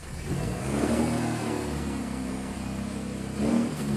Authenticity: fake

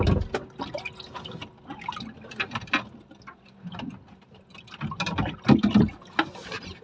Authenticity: real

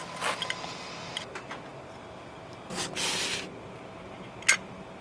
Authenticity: real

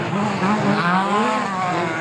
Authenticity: real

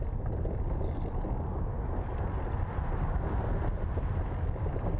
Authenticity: real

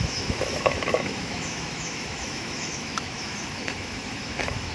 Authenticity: fake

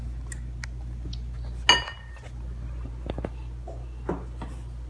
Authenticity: real